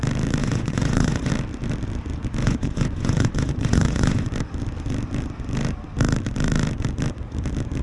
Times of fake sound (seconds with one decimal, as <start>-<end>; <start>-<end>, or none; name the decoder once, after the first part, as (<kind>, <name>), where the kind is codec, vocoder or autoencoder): 0.4-1.3 (vocoder, Vocos); 2.4-4.3